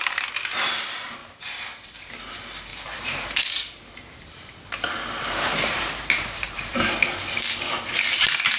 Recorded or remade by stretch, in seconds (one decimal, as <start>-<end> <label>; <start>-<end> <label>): 0.0-1.2 recorded; 1.2-2.1 remade; 2.1-2.7 recorded; 2.7-6.8 remade; 6.8-8.6 recorded